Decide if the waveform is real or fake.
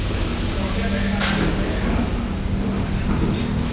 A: real